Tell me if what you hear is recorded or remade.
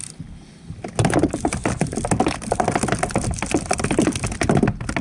recorded